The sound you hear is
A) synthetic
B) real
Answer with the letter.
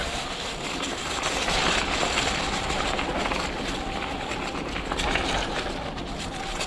B